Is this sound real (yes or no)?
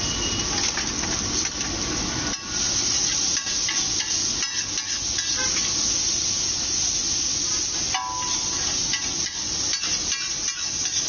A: yes